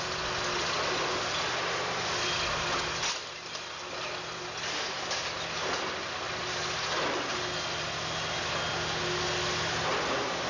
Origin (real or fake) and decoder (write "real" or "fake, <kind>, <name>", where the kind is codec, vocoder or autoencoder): real